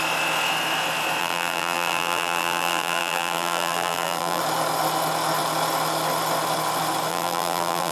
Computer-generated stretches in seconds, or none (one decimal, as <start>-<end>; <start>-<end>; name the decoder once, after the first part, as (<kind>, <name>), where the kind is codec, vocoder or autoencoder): 1.2-4.4 (vocoder, BigVGAN v2); 7.1-7.9

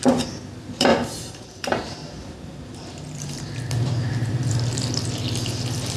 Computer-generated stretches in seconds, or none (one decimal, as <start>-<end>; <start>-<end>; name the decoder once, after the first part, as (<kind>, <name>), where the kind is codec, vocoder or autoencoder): 0.9-4.5 (vocoder, BigVGAN v2)

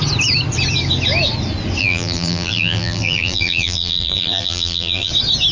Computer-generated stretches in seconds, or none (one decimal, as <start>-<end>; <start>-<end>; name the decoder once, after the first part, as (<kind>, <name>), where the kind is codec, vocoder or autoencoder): 1.8-5.1 (vocoder, BigVGAN v2)

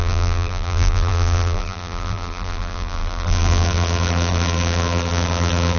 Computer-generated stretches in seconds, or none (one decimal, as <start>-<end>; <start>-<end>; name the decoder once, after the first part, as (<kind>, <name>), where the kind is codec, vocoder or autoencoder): 0.0-5.8 (vocoder, BigVGAN v2)

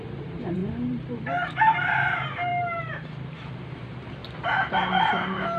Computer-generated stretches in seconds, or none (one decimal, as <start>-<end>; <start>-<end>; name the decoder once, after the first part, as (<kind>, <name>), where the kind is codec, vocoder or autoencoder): 0.0-4.2 (vocoder, BigVGAN v2); 5.0-5.6